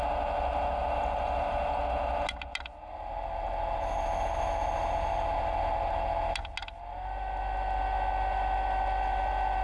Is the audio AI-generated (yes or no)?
no